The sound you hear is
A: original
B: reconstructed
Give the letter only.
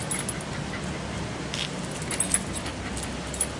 A